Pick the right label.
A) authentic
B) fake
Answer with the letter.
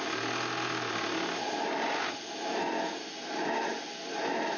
A